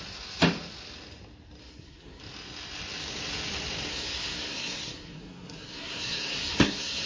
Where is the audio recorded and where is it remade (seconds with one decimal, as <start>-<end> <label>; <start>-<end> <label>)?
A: 0.0-1.6 recorded; 1.6-2.2 remade; 2.2-3.9 recorded; 3.9-7.1 remade